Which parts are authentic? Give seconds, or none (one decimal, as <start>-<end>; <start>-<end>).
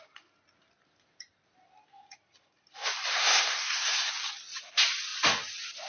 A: 0.0-3.1; 4.1-5.9